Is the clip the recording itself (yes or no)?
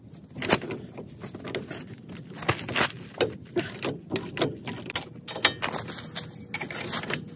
yes